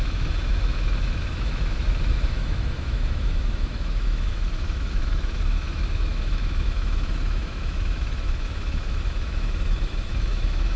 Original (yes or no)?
no